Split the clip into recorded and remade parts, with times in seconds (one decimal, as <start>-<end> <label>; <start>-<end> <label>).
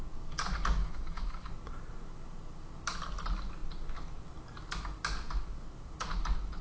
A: 0.0-0.8 recorded; 0.8-1.5 remade; 1.5-6.6 recorded